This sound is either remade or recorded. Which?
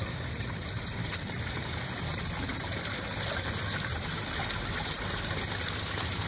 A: recorded